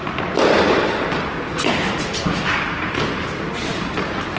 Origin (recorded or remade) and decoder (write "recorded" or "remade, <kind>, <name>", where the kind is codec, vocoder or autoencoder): remade, vocoder, BigVGAN v2